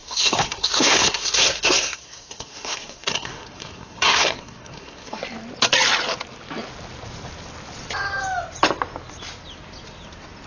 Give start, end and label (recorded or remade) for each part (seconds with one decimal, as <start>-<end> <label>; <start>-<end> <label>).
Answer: 0.0-5.2 remade; 5.2-10.5 recorded